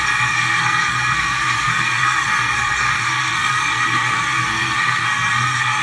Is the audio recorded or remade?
remade